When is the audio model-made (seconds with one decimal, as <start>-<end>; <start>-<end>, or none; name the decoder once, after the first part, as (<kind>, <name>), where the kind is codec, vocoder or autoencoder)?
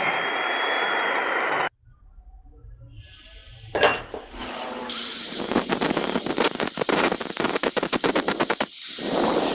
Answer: 0.0-9.5 (vocoder, BigVGAN v2)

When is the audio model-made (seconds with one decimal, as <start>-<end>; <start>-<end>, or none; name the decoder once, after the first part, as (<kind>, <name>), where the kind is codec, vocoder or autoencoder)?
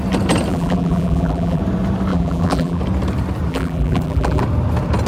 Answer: 0.5-1.6 (vocoder, BigVGAN v2); 2.1-2.8; 3.5-4.4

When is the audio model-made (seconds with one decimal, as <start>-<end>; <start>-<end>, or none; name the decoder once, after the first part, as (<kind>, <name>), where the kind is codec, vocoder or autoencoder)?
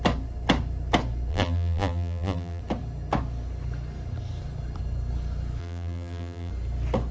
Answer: 1.3-2.6 (vocoder, BigVGAN v2); 5.6-6.5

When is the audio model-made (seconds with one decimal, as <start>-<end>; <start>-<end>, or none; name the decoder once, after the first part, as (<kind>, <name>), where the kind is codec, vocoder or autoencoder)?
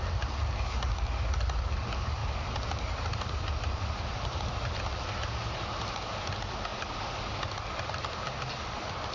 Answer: 2.2-4.8 (vocoder, BigVGAN v2)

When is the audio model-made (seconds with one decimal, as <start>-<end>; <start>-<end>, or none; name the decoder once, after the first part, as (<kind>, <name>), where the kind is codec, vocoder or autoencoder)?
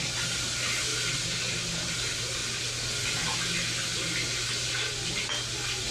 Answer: none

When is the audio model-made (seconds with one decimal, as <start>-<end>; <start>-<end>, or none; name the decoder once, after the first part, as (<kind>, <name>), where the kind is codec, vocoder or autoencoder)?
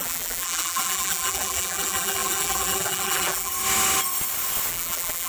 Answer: 0.0-3.5 (vocoder, BigVGAN v2); 4.7-5.3